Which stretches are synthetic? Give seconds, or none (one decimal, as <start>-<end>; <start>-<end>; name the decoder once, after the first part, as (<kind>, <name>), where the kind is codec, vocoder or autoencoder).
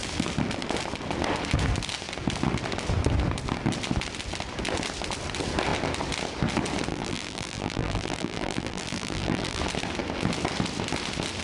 6.9-9.6 (vocoder, BigVGAN v2)